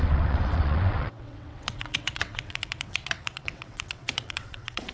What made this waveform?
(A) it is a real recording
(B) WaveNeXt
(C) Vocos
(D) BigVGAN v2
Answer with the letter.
B